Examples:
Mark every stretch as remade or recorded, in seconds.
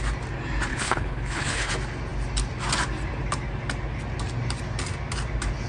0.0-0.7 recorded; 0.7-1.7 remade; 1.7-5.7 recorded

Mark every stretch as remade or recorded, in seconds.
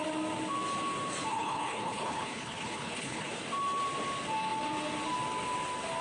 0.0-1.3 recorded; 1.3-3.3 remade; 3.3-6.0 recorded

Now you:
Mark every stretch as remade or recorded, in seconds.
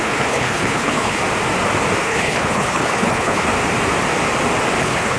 0.0-1.2 remade; 1.2-2.0 recorded; 2.0-3.5 remade; 3.5-4.8 recorded; 4.8-5.2 remade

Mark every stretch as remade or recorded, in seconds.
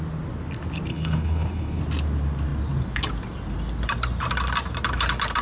0.0-0.9 recorded; 0.9-1.8 remade; 1.8-5.4 recorded